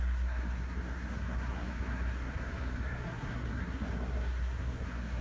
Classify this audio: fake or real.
fake